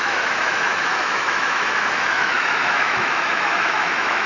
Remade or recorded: remade